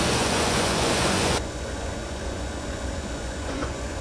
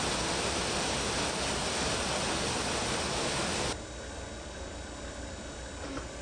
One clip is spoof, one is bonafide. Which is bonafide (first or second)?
second